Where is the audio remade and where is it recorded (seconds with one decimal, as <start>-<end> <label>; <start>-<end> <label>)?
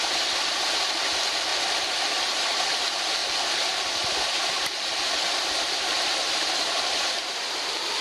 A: 0.0-1.5 recorded; 1.5-2.0 remade; 2.0-3.2 recorded; 3.2-8.0 remade